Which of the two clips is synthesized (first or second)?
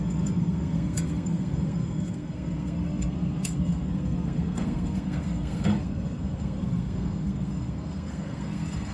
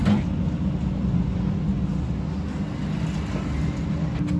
first